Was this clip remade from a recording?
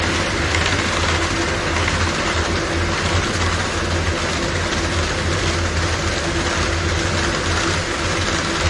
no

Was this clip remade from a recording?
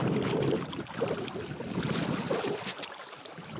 no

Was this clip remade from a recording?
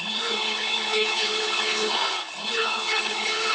yes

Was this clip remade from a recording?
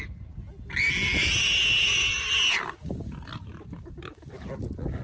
no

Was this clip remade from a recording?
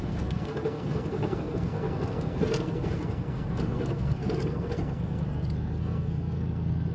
yes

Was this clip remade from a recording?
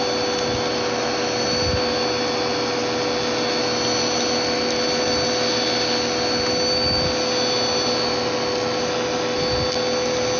no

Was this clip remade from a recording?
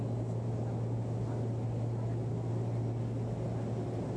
no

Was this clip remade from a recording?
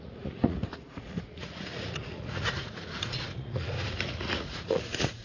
yes